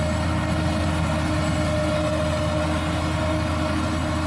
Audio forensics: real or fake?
real